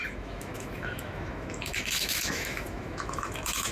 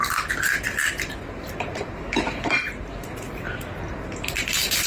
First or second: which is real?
second